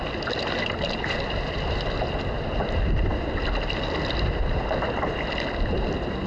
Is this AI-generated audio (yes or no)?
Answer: no